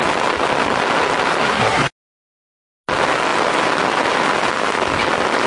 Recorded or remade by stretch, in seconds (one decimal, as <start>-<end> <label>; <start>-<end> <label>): 0.0-1.4 recorded; 1.4-1.9 remade; 1.9-5.5 recorded

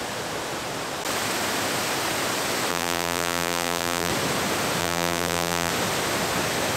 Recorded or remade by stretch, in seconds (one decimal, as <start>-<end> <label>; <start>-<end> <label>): 0.0-2.7 recorded; 2.7-4.1 remade; 4.1-4.8 recorded; 4.8-5.7 remade; 5.7-6.8 recorded

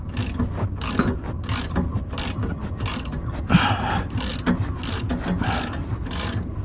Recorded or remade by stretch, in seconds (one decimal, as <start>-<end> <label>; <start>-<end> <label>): 0.0-6.6 recorded

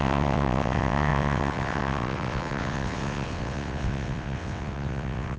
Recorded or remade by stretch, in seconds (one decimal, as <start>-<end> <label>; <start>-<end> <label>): 0.0-5.4 remade

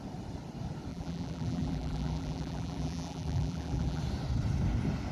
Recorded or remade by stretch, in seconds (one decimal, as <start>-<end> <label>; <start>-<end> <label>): 0.0-0.9 recorded; 0.9-4.0 remade; 4.0-5.1 recorded

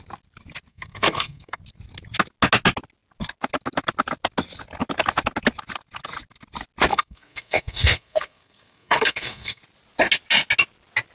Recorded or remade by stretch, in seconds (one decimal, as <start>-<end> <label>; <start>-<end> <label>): 0.0-0.7 recorded; 0.7-1.6 remade; 1.6-6.9 recorded; 6.9-9.6 remade; 9.6-11.1 recorded

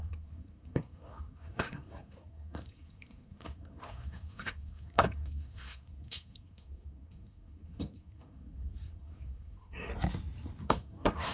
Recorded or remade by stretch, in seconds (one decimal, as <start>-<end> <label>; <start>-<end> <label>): 0.0-9.9 remade; 9.9-10.6 recorded; 10.6-11.3 remade